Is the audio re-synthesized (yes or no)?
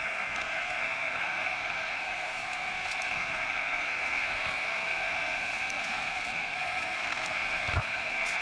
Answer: yes